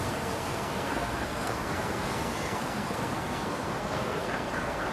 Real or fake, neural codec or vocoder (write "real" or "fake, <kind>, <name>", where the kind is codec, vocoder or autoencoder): fake, codec, SNAC